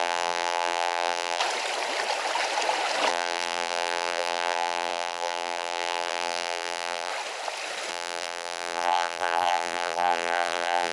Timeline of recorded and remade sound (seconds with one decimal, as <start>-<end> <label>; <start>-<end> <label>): 0.0-1.4 remade; 1.4-3.1 recorded; 3.1-7.1 remade; 7.1-7.9 recorded; 7.9-10.9 remade